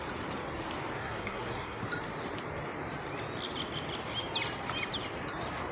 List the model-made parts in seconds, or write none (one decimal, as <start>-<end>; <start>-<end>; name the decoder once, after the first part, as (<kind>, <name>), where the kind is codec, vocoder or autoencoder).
1.0-1.8 (codec, SNAC)